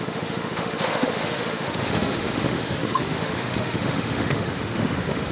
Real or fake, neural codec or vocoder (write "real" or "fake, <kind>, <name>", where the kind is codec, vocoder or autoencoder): fake, autoencoder, DAC-VAE